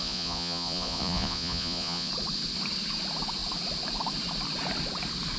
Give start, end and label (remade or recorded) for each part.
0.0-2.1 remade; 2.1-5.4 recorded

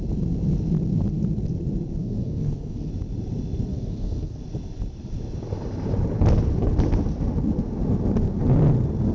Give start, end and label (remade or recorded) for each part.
0.0-2.0 recorded; 2.0-2.9 remade; 2.9-3.7 recorded; 3.7-4.4 remade; 4.4-9.1 recorded

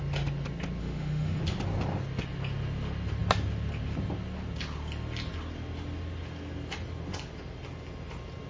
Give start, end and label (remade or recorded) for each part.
0.0-0.8 recorded; 0.8-1.4 remade; 1.4-8.5 recorded

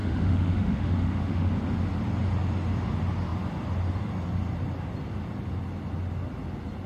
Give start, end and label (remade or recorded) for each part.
0.0-1.5 remade; 1.5-6.9 recorded

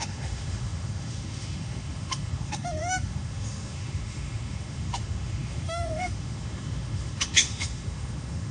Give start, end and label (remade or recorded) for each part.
0.0-8.5 remade

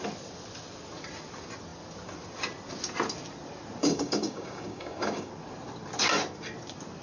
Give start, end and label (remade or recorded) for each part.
0.0-3.8 recorded; 3.8-5.3 remade; 5.3-7.0 recorded

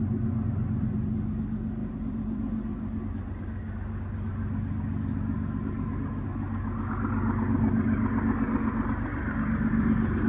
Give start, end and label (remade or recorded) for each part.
0.0-10.3 recorded